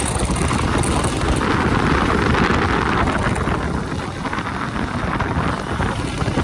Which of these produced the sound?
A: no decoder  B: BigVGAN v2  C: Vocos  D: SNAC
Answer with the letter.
A